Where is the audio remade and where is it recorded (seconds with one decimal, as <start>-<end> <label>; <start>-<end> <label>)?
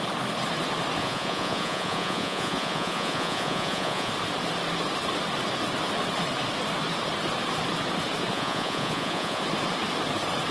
0.0-1.0 recorded; 1.0-4.1 remade; 4.1-8.3 recorded; 8.3-9.4 remade; 9.4-10.5 recorded